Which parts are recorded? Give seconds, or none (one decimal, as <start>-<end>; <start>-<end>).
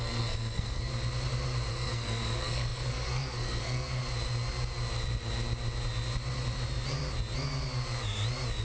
0.9-1.7; 4.0-8.6